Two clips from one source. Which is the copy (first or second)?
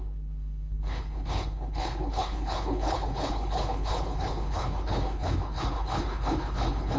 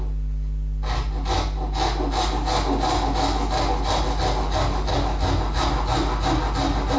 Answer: first